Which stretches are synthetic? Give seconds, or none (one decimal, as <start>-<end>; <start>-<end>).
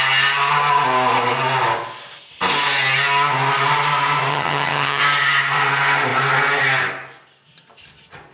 4.3-5.0